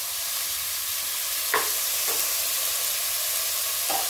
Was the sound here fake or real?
fake